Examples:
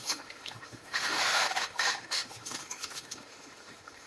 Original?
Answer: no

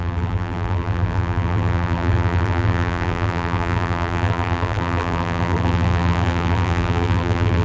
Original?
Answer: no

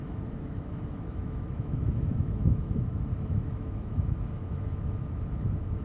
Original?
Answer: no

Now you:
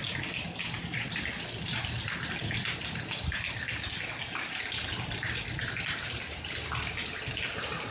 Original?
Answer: yes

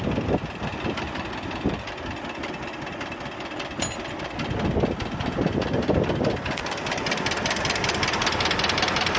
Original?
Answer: yes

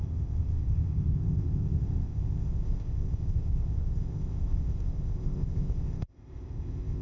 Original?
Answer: no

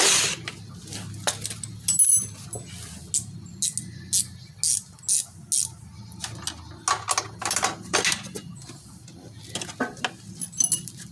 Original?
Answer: yes